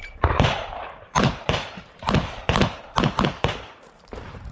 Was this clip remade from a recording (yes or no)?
yes